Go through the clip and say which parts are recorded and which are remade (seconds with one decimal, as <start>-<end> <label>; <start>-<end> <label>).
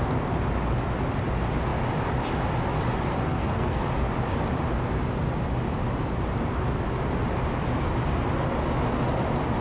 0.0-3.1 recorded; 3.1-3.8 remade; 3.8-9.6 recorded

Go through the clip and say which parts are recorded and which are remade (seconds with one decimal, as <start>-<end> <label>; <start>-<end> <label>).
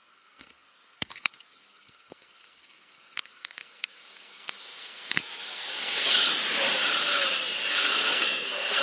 0.0-6.2 remade; 6.2-7.7 recorded; 7.7-8.8 remade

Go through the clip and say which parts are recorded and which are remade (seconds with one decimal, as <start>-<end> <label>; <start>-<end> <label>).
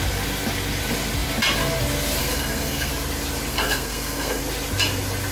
0.0-2.2 recorded; 2.2-2.9 remade; 2.9-3.5 recorded; 3.5-4.4 remade; 4.4-5.3 recorded